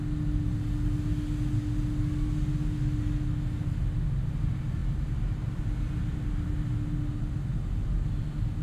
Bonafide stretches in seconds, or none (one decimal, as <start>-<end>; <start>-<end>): 0.0-8.6